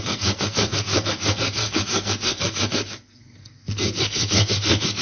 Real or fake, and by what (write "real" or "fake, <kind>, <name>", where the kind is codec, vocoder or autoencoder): fake, codec, SNAC